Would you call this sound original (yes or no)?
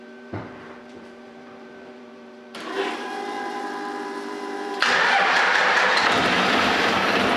no